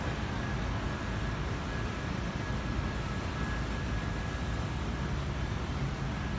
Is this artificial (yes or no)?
no